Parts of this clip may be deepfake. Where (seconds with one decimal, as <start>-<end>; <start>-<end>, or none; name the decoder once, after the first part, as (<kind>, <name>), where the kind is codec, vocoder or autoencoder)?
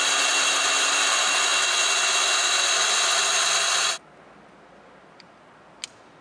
none